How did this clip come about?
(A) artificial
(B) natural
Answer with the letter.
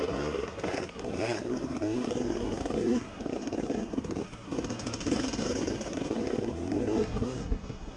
A